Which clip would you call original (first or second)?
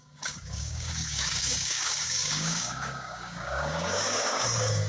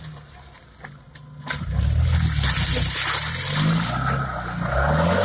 second